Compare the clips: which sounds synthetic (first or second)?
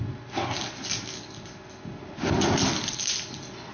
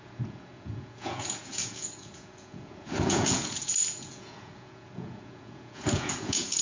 second